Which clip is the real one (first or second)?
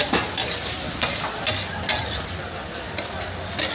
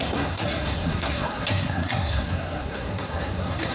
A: first